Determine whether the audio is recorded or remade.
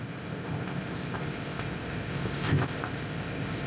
remade